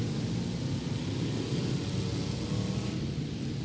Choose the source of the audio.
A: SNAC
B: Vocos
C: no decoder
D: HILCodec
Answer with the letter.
C